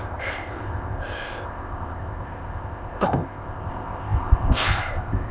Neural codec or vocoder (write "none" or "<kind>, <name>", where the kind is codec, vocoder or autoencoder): codec, ZipCodec